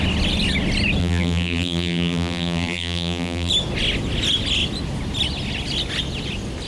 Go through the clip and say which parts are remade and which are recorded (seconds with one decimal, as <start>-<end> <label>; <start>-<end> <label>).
0.0-1.0 recorded; 1.0-3.5 remade; 3.5-6.7 recorded